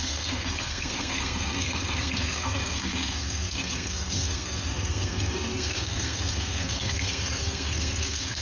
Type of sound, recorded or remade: remade